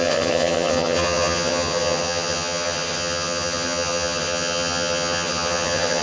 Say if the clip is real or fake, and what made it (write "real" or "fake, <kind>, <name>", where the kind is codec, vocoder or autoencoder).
fake, vocoder, HiFi-GAN